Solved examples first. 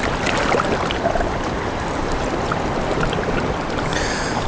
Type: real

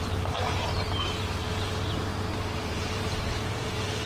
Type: real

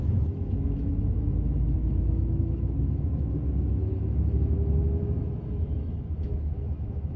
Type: fake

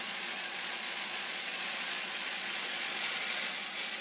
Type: fake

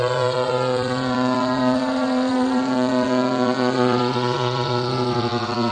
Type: fake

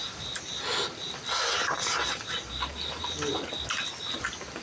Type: real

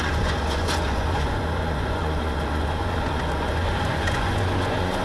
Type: fake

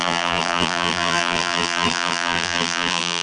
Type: fake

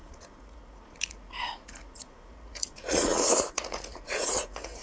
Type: fake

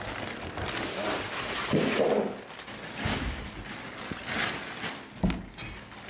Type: real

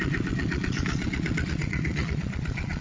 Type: fake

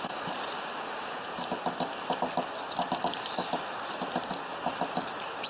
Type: fake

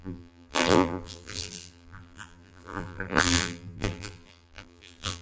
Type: fake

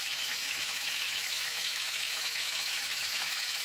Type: fake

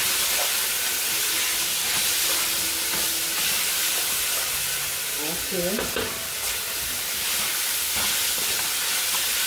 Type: real